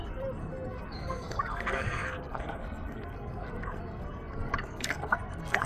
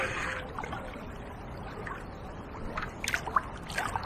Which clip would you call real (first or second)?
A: second